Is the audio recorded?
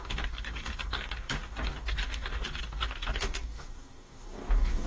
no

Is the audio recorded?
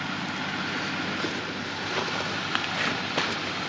yes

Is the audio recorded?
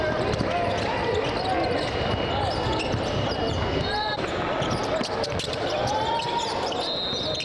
yes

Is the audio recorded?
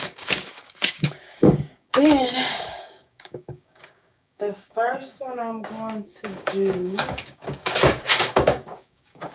no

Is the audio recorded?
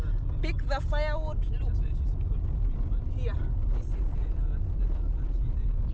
yes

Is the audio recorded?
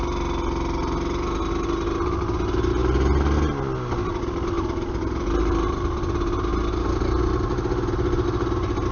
yes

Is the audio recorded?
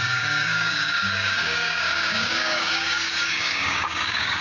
no